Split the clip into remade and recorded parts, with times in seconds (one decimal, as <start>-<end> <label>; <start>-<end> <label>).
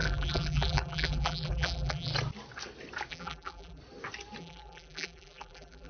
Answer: 0.0-2.1 remade; 2.1-3.1 recorded; 3.1-3.8 remade; 3.8-4.4 recorded; 4.4-5.9 remade